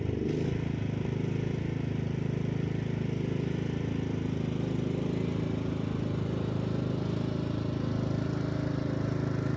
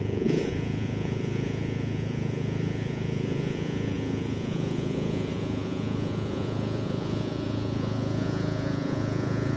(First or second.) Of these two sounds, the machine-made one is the second